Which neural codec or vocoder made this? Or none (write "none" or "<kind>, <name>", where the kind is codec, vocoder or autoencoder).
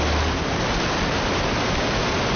none